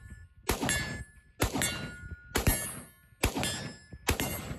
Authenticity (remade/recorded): recorded